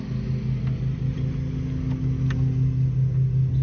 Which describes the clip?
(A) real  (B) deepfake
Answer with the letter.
A